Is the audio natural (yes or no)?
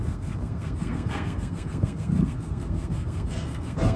no